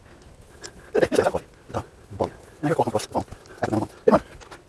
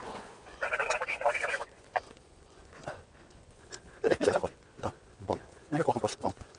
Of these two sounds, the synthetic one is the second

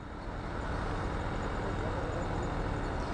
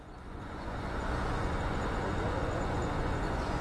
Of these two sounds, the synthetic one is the second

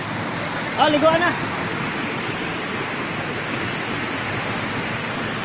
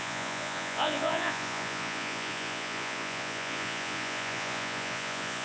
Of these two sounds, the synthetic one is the second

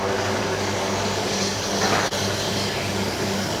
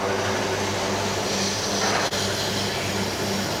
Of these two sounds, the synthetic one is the first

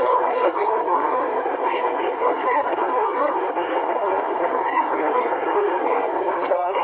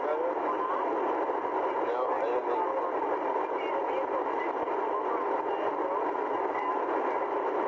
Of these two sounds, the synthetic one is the first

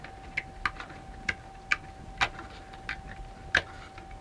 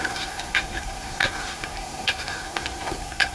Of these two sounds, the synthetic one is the second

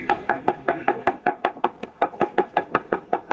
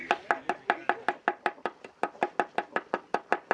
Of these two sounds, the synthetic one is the first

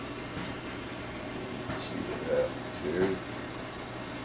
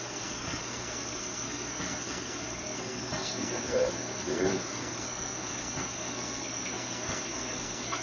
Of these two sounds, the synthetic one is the second